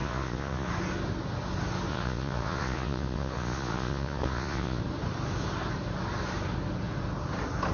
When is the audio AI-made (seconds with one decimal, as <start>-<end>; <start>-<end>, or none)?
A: 0.0-0.7; 1.9-4.8

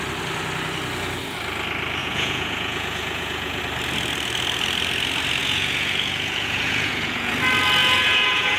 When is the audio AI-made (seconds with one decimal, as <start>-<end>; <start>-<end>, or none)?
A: 2.0-3.6; 5.4-7.3; 7.8-8.6

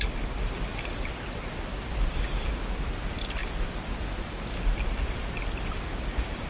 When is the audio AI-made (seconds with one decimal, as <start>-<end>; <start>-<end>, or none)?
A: none

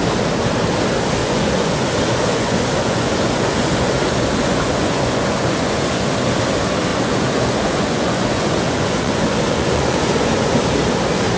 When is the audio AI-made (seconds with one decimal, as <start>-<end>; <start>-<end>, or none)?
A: 1.2-6.1; 6.9-10.6

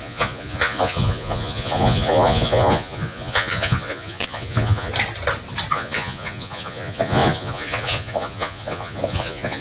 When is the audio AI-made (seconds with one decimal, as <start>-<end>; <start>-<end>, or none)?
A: 0.0-4.9; 5.7-9.6

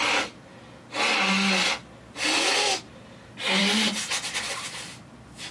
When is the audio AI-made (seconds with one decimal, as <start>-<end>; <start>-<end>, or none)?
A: none

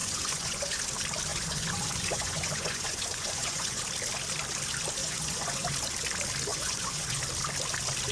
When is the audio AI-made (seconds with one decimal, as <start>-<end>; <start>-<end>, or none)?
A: 0.0-0.8; 1.3-3.8; 5.0-5.7; 6.5-7.2

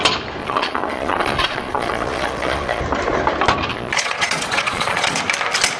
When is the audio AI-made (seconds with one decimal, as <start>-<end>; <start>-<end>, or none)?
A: 0.4-2.8; 3.7-5.2